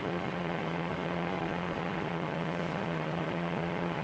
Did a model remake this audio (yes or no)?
yes